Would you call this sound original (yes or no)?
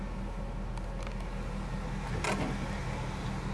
yes